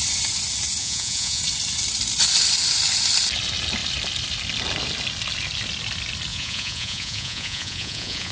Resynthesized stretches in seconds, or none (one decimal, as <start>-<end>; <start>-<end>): 0.8-1.4; 6.3-8.3